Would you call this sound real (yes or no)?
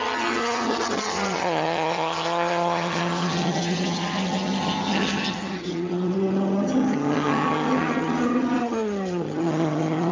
no